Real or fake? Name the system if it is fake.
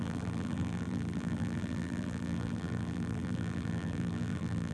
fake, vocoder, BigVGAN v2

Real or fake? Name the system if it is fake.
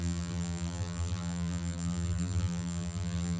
fake, vocoder, BigVGAN v2